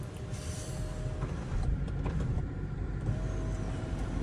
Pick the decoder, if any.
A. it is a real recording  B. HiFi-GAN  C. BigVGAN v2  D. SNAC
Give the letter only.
C